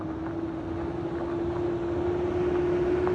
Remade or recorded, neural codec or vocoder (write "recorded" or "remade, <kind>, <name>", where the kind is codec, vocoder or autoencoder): recorded